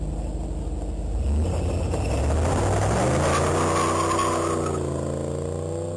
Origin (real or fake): real